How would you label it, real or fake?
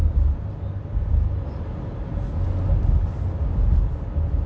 real